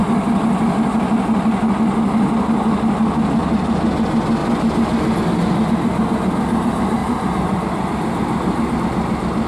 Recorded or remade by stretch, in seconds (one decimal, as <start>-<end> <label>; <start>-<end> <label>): 0.0-0.9 remade; 0.9-3.4 recorded; 3.4-4.0 remade; 4.0-7.0 recorded; 7.0-8.8 remade; 8.8-9.5 recorded